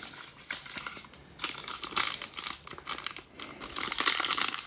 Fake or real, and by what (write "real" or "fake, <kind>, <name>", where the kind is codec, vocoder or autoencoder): real